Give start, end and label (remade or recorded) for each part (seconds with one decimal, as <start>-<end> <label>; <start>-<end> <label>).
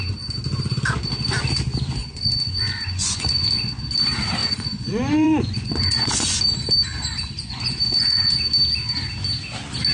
0.0-2.0 recorded; 2.0-3.8 remade; 3.8-4.4 recorded; 4.4-6.4 remade; 6.4-7.1 recorded; 7.1-8.4 remade; 8.4-9.9 recorded